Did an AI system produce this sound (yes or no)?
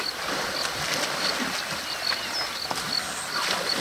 no